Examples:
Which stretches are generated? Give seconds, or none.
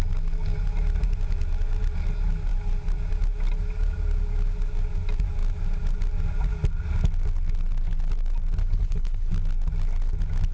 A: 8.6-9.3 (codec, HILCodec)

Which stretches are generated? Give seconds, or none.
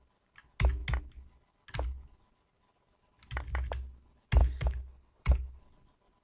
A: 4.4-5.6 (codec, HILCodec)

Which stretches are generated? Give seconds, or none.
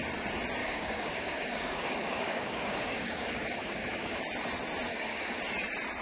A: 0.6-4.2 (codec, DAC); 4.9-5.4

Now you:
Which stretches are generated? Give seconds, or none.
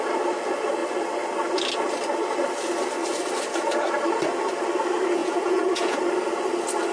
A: 5.2-6.0 (vocoder, Vocos)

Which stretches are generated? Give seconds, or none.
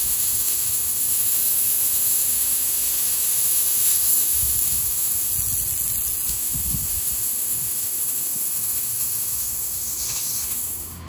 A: 0.0-5.3 (autoencoder, DAC-VAE); 6.3-11.1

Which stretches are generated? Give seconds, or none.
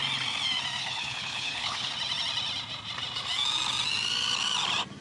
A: 0.8-1.9 (codec, HILCodec)